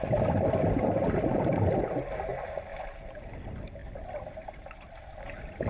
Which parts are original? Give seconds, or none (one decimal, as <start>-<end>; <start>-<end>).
0.0-5.7